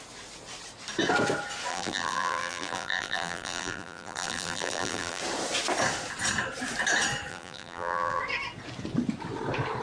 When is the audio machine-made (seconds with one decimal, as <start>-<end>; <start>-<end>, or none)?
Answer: 1.7-5.2; 7.3-8.2

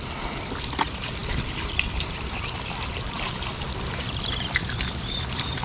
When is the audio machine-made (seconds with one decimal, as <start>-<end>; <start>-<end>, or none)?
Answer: 0.0-5.6

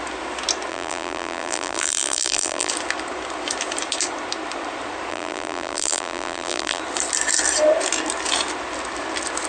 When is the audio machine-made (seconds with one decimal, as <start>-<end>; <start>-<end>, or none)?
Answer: 0.7-2.7; 5.1-6.8

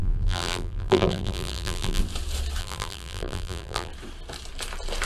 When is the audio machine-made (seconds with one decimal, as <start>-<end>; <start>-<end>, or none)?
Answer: 0.0-2.0; 2.6-3.9